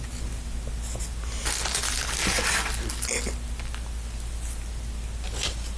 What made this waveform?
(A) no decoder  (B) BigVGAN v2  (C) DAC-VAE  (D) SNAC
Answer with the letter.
A